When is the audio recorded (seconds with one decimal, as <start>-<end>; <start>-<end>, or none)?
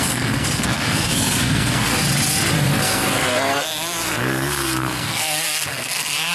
1.9-2.8